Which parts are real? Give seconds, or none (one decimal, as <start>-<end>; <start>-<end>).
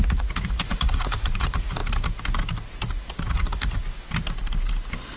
1.8-2.7; 3.8-5.2